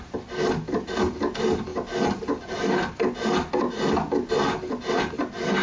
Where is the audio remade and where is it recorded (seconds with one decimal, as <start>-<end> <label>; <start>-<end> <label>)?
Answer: 0.0-5.6 recorded